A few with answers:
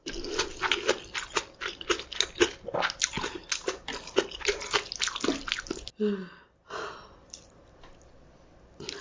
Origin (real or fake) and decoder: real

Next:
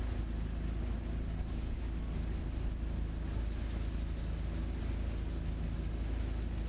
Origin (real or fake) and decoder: real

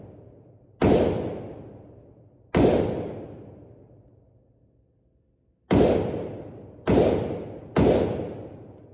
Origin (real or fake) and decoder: real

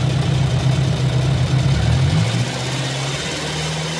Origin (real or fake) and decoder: real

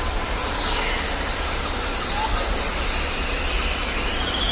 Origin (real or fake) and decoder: real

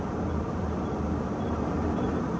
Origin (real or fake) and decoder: fake, vocoder, BigVGAN v2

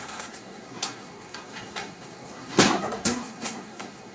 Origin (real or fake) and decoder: fake, codec, SNAC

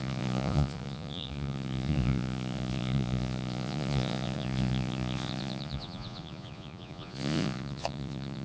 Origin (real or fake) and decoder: fake, vocoder, Vocos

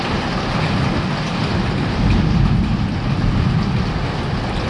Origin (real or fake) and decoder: real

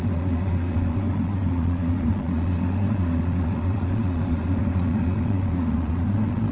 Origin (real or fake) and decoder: fake, vocoder, Vocos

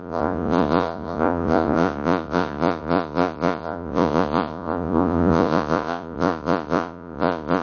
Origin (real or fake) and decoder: fake, vocoder, Vocos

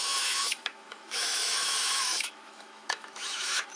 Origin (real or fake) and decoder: fake, autoencoder, DAC-VAE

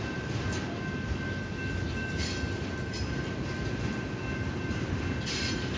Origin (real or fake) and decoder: real